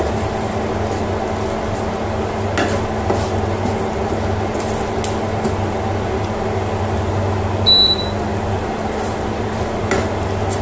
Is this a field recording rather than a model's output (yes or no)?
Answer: yes